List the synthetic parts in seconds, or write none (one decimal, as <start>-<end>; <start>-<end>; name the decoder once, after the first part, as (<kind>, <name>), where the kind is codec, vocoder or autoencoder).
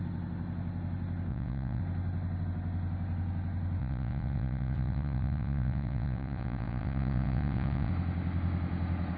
1.3-1.8 (vocoder, WaveNeXt); 3.8-7.9